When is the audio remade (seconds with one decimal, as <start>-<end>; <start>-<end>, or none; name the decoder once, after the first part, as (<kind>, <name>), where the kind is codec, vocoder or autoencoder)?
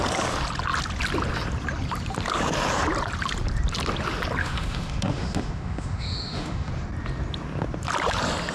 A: 4.4-6.7 (autoencoder, DAC-VAE)